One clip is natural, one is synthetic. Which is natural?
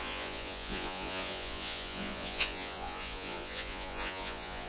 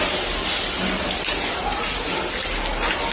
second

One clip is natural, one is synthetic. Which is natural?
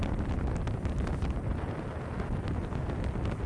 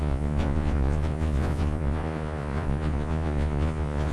first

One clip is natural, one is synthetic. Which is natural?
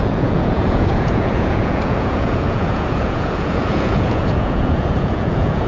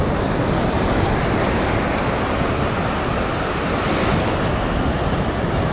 second